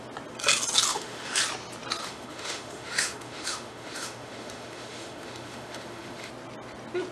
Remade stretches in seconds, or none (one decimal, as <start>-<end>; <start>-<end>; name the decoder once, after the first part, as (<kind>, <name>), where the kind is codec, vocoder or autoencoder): 0.9-1.4 (autoencoder, DAC-VAE); 2.0-6.3